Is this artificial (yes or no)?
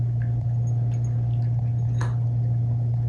no